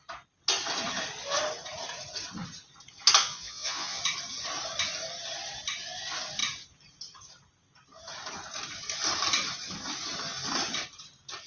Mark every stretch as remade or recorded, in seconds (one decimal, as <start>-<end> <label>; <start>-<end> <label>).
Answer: 0.0-3.2 recorded; 3.2-4.0 remade; 4.0-11.5 recorded